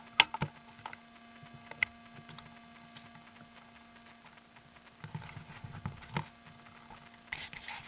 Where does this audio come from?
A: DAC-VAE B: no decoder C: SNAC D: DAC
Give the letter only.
B